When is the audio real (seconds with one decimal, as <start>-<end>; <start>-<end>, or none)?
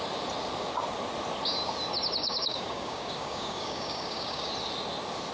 0.0-2.2; 4.5-5.3